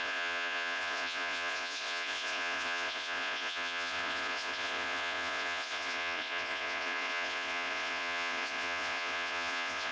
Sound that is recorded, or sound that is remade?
remade